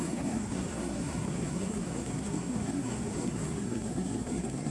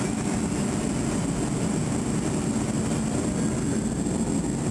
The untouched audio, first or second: second